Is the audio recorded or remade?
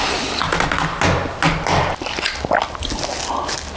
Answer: recorded